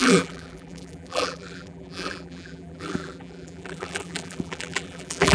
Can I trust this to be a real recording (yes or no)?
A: no